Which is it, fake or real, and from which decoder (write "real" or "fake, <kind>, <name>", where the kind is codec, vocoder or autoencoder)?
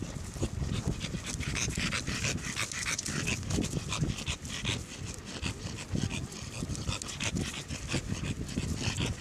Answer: real